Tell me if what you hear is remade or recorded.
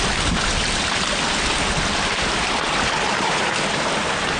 recorded